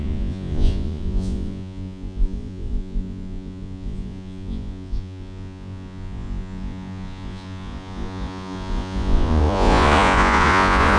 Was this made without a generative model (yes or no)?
no